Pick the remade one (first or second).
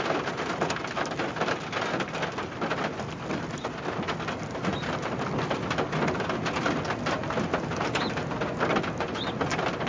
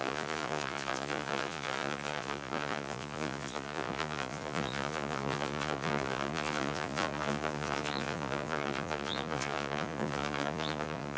second